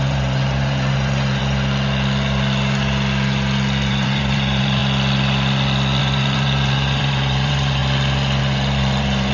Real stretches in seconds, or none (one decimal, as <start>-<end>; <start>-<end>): 1.4-3.9; 4.8-6.0; 7.8-8.4

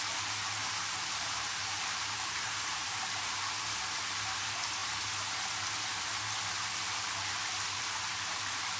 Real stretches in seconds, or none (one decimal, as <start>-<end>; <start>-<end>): 0.0-0.6; 3.5-8.8

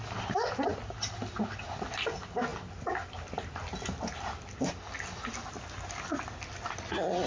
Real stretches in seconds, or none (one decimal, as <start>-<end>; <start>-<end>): 0.0-7.3

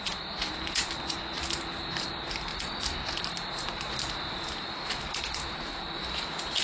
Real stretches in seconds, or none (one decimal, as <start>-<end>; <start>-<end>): 0.0-6.6

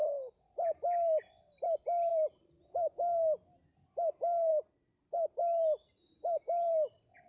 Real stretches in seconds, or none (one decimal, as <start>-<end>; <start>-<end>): 1.3-2.1; 2.6-4.5; 5.1-7.3

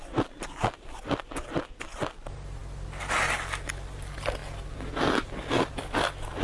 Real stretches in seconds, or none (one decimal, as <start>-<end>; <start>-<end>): 0.0-6.4

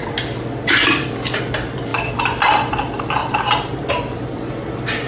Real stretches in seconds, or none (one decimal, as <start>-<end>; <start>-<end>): 0.0-1.9; 2.7-5.1

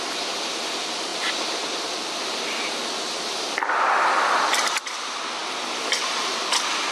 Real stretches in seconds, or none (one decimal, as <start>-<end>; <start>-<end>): 0.0-6.9